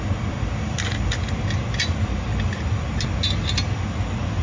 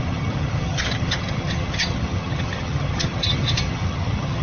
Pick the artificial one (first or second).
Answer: second